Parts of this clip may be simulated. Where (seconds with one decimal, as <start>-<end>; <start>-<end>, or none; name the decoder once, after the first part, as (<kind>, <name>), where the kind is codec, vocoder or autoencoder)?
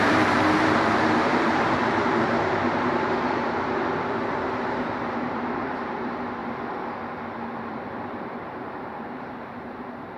0.0-6.4 (vocoder, BigVGAN v2); 7.6-10.2